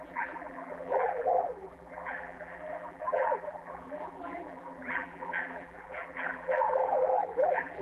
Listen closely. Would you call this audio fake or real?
fake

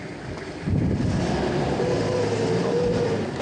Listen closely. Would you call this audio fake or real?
real